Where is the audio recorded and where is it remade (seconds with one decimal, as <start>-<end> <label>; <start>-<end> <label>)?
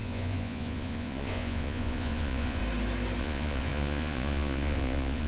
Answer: 0.0-2.6 remade; 2.6-3.2 recorded; 3.2-5.3 remade